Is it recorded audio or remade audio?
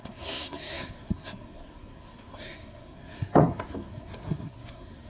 remade